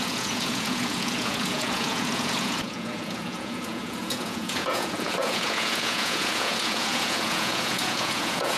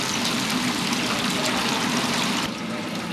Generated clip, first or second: first